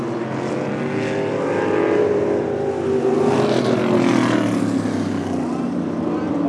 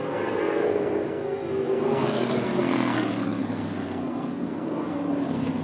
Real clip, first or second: first